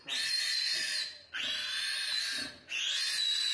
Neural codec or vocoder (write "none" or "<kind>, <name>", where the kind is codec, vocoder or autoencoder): none